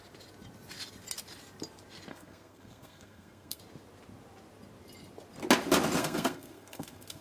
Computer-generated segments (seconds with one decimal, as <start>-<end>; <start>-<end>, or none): 2.1-3.6; 6.0-7.2